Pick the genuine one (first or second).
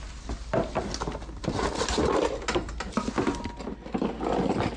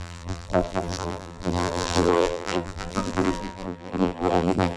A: first